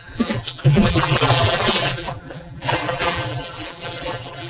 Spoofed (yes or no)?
yes